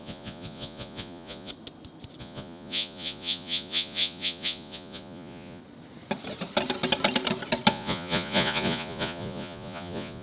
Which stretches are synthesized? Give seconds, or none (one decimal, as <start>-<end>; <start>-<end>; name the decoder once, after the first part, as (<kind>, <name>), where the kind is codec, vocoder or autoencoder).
0.0-1.5 (vocoder, Vocos); 2.2-5.6; 7.7-10.2